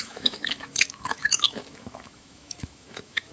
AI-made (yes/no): yes